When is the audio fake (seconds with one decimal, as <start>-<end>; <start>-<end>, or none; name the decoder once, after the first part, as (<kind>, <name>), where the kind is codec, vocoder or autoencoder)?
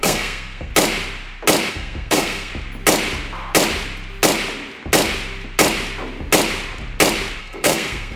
0.0-0.7 (codec, SNAC); 1.7-2.5; 7.4-8.2